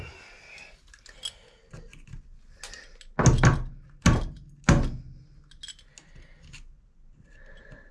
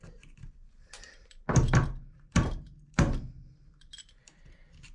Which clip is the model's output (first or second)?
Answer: second